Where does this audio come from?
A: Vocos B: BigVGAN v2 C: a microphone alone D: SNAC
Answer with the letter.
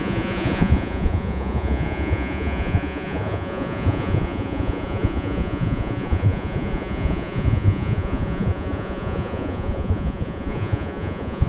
A